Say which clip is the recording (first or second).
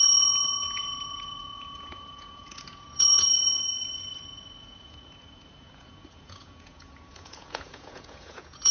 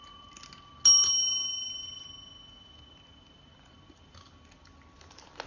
second